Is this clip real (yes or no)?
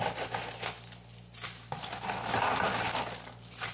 yes